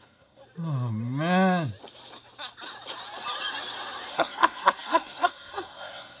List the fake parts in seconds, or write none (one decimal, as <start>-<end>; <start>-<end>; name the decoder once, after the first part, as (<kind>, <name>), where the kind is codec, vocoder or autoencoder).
0.0-0.4 (codec, SNAC); 4.1-6.2